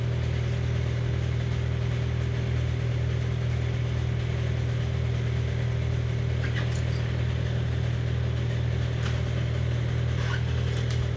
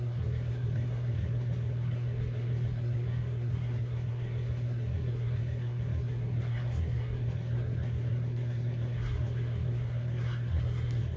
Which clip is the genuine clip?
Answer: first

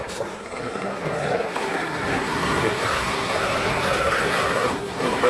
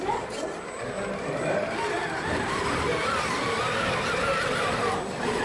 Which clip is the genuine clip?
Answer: second